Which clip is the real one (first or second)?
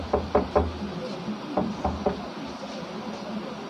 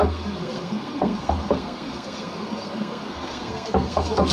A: first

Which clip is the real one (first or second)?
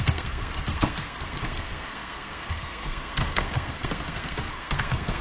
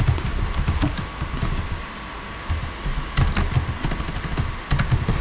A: second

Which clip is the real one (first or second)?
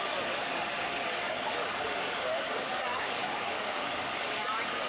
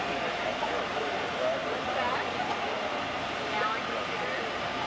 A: second